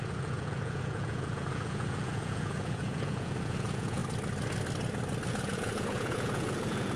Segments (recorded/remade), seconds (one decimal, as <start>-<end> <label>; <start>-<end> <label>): 0.0-4.0 remade; 4.0-5.3 recorded; 5.3-7.0 remade